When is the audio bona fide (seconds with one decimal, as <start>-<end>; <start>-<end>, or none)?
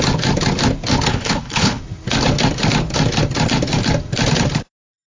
0.0-1.1; 1.8-5.1